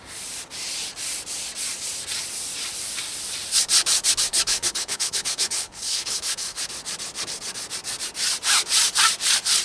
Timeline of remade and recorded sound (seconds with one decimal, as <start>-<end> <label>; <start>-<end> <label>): 0.0-4.3 recorded; 4.3-6.6 remade; 6.6-9.6 recorded